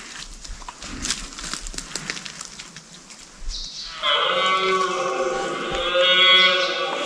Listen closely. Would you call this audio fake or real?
real